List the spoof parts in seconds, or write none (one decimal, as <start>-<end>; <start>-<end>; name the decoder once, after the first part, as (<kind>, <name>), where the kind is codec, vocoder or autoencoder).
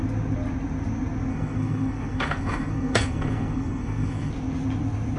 1.3-4.3 (codec, SNAC)